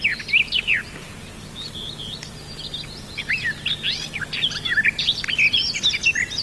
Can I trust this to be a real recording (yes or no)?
yes